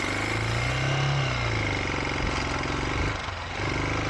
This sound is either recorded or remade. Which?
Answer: recorded